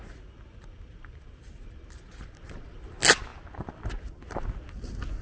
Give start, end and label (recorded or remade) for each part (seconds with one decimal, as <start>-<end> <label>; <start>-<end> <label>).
0.0-5.2 recorded